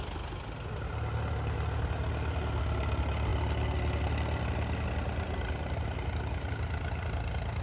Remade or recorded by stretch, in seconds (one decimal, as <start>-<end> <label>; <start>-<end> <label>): 0.0-7.6 recorded

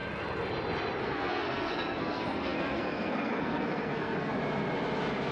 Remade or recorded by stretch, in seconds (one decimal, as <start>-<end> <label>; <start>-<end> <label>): 0.0-1.0 recorded; 1.0-4.3 remade; 4.3-5.3 recorded